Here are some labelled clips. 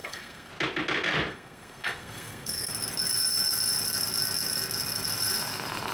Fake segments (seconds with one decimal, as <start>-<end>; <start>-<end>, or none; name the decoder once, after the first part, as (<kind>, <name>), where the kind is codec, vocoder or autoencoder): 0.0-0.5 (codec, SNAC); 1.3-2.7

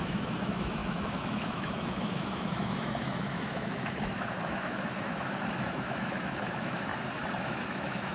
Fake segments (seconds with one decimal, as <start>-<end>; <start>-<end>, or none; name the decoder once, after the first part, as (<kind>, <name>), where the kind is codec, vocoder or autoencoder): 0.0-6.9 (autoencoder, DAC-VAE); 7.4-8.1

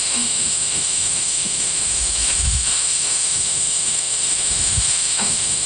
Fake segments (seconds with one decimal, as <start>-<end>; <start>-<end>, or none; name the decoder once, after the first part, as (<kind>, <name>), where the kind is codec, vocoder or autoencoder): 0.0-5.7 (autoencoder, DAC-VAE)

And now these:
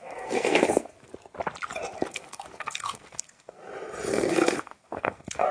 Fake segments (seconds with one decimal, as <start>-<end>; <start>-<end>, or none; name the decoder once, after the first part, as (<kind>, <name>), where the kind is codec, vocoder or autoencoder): 0.0-1.1 (codec, SNAC); 2.1-3.6; 4.1-5.5

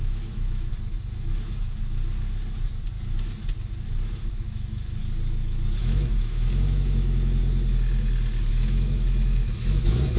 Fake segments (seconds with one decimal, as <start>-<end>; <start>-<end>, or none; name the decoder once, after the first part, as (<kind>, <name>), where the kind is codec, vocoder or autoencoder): 0.0-0.7 (autoencoder, DAC-VAE); 4.3-5.0; 5.8-7.4; 8.5-10.2

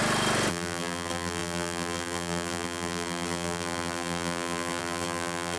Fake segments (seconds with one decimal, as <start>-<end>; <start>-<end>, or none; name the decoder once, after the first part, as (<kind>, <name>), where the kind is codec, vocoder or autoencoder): 0.5-5.6 (vocoder, BigVGAN v2)

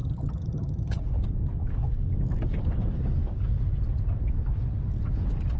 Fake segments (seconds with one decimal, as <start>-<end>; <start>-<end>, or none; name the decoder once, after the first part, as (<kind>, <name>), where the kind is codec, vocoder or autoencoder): 0.0-1.0 (vocoder, HiFi-GAN)

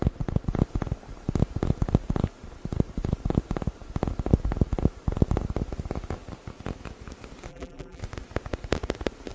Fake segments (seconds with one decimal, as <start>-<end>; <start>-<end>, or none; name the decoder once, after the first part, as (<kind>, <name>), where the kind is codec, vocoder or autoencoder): 7.5-8.0 (vocoder, BigVGAN v2)